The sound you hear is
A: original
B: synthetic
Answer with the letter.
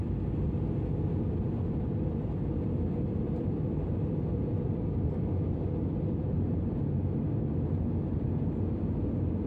A